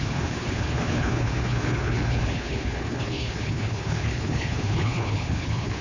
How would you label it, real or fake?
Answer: fake